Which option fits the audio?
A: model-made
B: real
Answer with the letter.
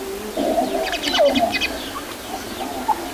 B